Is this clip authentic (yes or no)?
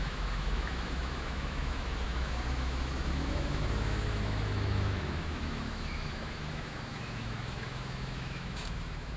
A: no